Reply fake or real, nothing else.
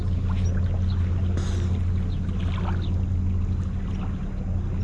real